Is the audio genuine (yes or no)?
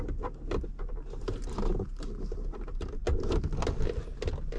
yes